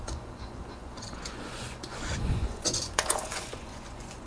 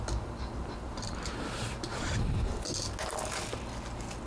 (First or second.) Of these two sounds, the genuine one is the second